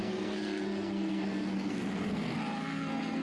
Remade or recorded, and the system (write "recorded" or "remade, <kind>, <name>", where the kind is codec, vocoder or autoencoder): remade, codec, SNAC